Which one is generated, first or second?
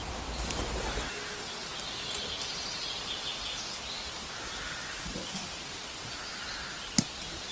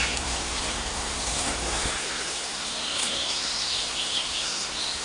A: second